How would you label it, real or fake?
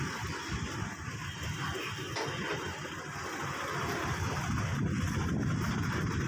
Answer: real